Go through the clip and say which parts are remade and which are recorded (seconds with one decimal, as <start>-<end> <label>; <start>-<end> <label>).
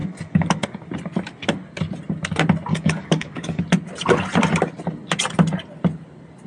0.0-0.9 remade; 0.9-2.7 recorded; 2.7-3.6 remade; 3.6-6.5 recorded